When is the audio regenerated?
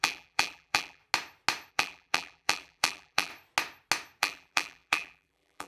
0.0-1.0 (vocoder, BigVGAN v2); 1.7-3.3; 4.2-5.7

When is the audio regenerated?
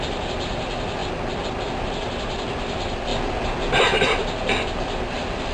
none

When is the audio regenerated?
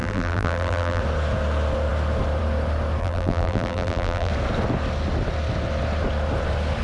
0.0-1.0 (vocoder, BigVGAN v2); 3.0-4.3